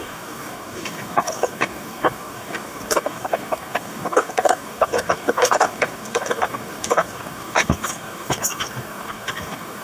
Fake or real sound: fake